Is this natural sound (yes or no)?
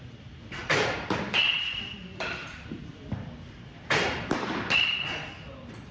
no